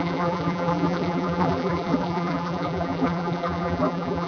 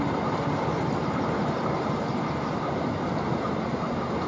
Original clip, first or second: second